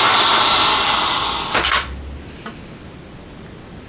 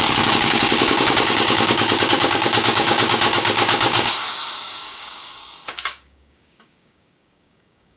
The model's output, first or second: second